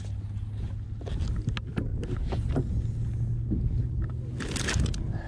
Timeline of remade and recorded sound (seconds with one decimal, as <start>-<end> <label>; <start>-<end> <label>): 0.0-5.3 recorded